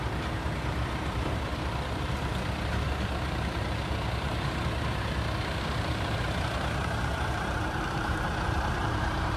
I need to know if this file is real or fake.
fake